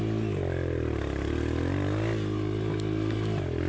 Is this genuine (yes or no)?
yes